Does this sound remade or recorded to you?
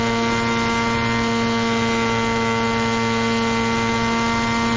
recorded